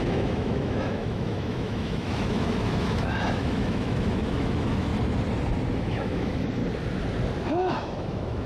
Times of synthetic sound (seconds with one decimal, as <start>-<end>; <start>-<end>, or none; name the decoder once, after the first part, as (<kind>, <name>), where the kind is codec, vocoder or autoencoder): 0.0-4.9 (autoencoder, DAC-VAE); 5.8-6.6; 7.6-8.5